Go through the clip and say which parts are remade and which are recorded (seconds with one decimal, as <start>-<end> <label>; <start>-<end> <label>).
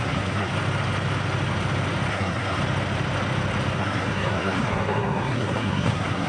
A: 0.0-0.5 remade; 0.5-2.1 recorded; 2.1-2.6 remade; 2.6-3.8 recorded; 3.8-6.3 remade